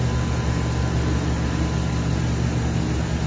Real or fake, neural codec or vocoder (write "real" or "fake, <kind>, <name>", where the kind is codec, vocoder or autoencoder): real